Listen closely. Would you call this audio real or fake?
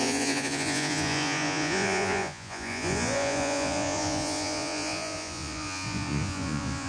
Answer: fake